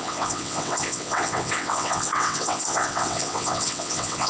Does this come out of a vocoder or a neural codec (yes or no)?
yes